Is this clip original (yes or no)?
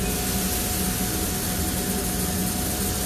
yes